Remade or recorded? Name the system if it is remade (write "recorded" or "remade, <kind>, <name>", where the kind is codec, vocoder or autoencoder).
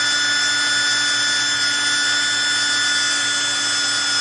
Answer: recorded